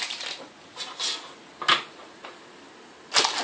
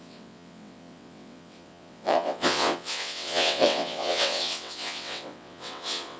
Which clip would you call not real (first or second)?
second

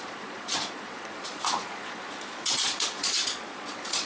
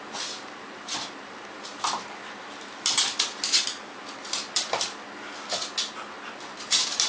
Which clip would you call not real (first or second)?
first